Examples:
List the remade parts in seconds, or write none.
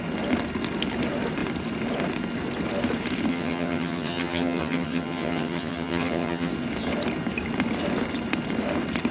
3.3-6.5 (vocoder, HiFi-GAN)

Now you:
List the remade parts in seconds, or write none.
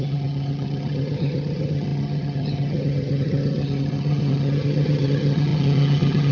0.0-6.3 (vocoder, HiFi-GAN)